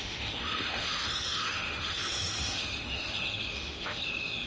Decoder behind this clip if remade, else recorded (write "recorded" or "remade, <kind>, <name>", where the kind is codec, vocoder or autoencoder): remade, autoencoder, DAC-VAE